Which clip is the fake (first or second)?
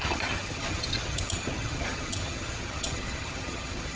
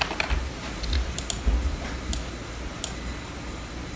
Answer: first